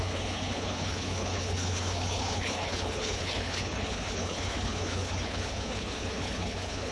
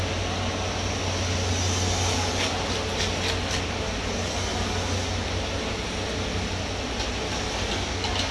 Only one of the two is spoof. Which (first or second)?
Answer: first